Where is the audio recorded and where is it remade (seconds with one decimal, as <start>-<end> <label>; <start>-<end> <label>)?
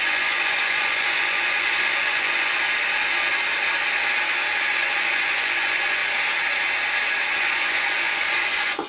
0.0-2.5 remade; 2.5-4.7 recorded; 4.7-6.0 remade; 6.0-7.4 recorded; 7.4-8.9 remade